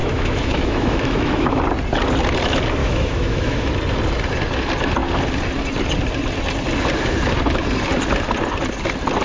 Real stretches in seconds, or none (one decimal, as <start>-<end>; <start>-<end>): 1.6-2.8; 3.7-9.2